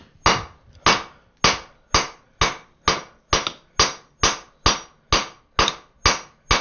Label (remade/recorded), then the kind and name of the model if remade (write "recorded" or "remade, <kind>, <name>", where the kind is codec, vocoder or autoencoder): recorded